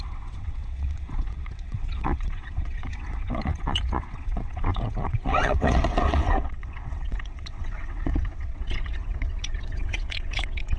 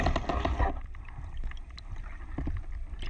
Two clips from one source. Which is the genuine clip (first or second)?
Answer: second